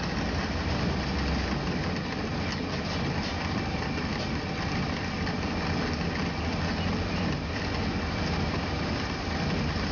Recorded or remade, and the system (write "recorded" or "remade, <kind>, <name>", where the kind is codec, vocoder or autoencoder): recorded